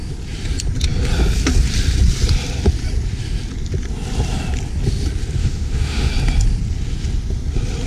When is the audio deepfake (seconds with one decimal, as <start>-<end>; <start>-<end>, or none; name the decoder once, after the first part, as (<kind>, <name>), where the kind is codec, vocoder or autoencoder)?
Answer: 5.4-6.1 (autoencoder, DAC-VAE)

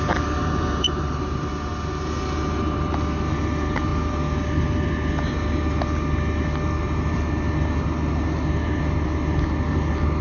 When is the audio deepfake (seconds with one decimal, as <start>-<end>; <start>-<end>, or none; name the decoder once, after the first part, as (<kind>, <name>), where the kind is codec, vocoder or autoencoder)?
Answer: 0.4-1.5 (vocoder, BigVGAN v2)